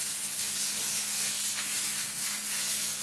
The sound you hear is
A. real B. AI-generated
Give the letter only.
B